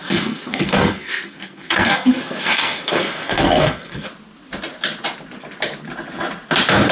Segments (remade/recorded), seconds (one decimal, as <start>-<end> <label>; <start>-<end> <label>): 0.0-4.1 remade; 4.1-6.9 recorded